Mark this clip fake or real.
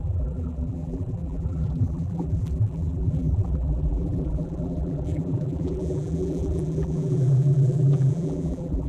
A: fake